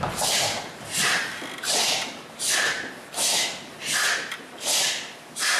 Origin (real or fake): real